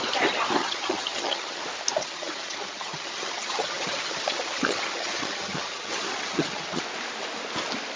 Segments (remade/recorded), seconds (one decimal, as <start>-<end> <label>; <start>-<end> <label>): 0.0-0.6 recorded; 0.6-1.6 remade; 1.6-2.0 recorded; 2.0-6.8 remade; 6.8-8.0 recorded